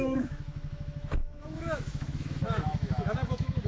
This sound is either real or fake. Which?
fake